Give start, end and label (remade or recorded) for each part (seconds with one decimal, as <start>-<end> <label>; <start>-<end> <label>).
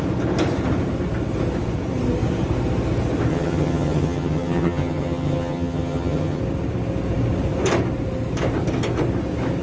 0.0-3.3 recorded; 3.3-6.4 remade; 6.4-9.6 recorded